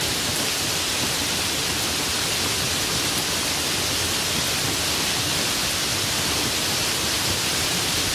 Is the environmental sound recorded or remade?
recorded